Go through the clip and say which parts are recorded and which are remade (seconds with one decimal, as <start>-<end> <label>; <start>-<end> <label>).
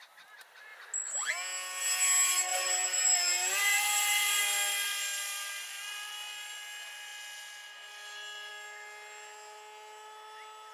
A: 0.0-2.5 recorded; 2.5-4.4 remade; 4.4-10.7 recorded